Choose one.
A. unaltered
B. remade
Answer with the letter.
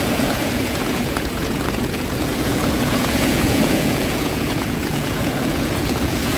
B